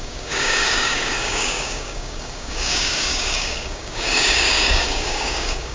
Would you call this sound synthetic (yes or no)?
yes